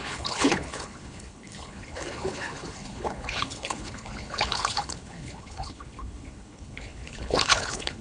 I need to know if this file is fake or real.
fake